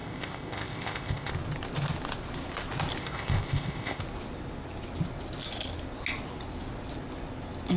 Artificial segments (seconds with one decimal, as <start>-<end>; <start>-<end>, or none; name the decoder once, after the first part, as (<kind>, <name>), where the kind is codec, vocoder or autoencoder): 0.0-1.3 (codec, ZipCodec); 3.0-4.0